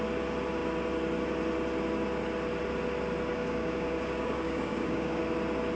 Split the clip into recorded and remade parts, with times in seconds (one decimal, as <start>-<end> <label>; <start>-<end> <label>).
0.0-3.3 recorded; 3.3-5.2 remade; 5.2-5.8 recorded